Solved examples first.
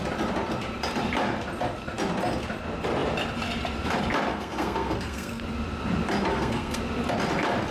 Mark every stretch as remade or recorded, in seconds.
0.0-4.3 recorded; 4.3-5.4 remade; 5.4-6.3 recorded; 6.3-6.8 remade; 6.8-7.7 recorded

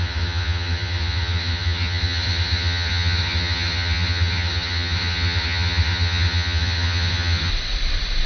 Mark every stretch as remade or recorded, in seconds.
0.0-7.5 remade; 7.5-8.3 recorded

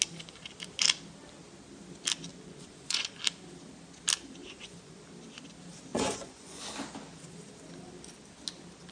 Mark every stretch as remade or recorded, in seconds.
0.0-2.3 recorded; 2.3-3.2 remade; 3.2-4.4 recorded; 4.4-5.0 remade; 5.0-5.9 recorded; 5.9-6.6 remade; 6.6-8.9 recorded

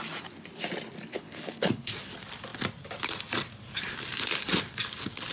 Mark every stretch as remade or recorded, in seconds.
0.0-1.1 recorded; 1.1-1.9 remade; 1.9-5.3 recorded

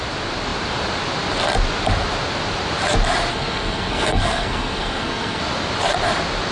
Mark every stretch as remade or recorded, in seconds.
0.0-3.3 recorded; 3.3-5.4 remade; 5.4-6.5 recorded

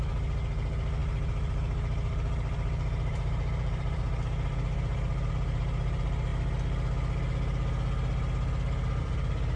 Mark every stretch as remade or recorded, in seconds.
0.0-6.3 remade; 6.3-9.0 recorded; 9.0-9.6 remade

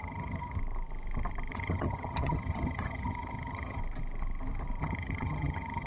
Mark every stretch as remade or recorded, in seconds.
0.0-0.6 remade; 0.6-1.5 recorded; 1.5-3.8 remade; 3.8-4.8 recorded; 4.8-5.9 remade

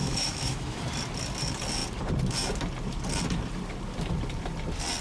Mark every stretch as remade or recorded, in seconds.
0.0-0.8 remade; 0.8-5.0 recorded